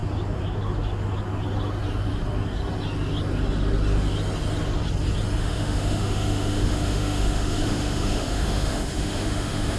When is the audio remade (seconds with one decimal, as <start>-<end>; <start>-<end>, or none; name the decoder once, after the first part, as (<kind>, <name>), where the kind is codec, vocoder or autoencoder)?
5.4-9.8 (autoencoder, DAC-VAE)